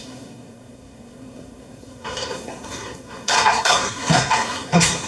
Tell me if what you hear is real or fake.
fake